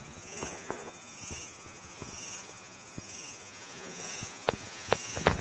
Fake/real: fake